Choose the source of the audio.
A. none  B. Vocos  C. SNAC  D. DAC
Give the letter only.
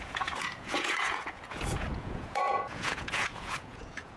B